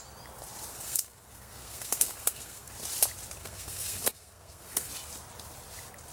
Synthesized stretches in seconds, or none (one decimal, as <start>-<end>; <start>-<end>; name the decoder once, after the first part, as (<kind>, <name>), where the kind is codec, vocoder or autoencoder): 0.7-2.7 (codec, SNAC); 3.4-4.9